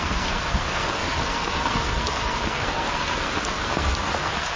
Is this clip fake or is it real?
fake